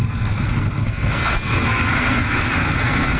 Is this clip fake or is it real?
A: fake